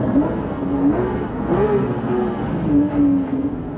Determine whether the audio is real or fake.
fake